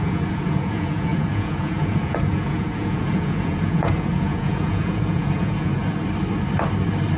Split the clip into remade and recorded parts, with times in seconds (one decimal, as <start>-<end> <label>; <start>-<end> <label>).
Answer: 0.0-5.8 remade; 5.8-7.2 recorded